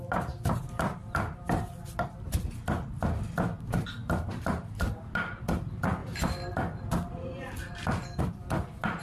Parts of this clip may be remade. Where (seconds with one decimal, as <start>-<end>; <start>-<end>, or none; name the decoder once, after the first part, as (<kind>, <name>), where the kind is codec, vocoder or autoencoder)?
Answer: 1.0-1.7 (vocoder, BigVGAN v2); 4.0-5.0